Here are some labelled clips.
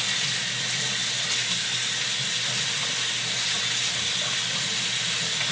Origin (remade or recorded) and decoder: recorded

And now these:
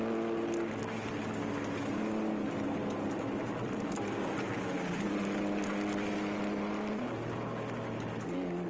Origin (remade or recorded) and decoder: recorded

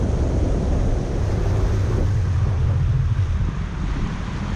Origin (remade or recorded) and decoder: recorded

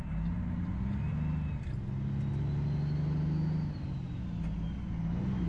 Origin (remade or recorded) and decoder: recorded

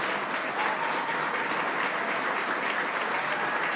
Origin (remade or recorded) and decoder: recorded